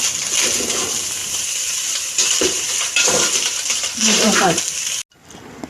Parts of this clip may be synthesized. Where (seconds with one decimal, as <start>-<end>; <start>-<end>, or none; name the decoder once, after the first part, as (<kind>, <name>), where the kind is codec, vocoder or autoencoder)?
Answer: 1.2-4.6 (vocoder, BigVGAN v2)